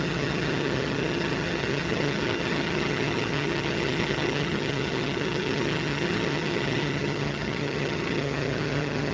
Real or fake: fake